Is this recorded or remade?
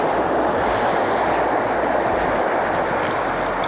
recorded